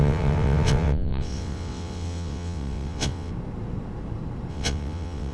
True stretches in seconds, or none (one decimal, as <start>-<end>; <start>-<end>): 3.3-4.5